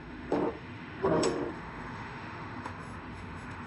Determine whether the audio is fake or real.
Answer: fake